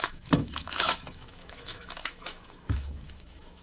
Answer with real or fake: fake